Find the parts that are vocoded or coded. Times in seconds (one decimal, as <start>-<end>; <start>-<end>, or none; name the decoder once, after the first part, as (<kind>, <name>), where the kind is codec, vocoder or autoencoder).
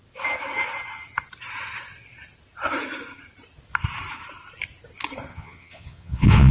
5.3-6.5 (vocoder, Vocos)